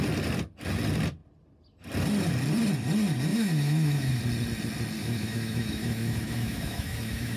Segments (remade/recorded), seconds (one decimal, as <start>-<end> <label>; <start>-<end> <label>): 0.0-3.3 recorded; 3.3-4.2 remade; 4.2-5.0 recorded; 5.0-7.4 remade